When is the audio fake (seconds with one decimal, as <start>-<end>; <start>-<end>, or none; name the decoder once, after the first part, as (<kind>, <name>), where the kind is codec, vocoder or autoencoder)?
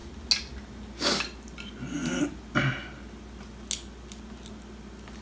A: none